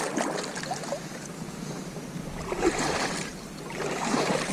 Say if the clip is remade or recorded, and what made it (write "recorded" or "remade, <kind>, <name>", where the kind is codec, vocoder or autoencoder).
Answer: remade, vocoder, BigVGAN v2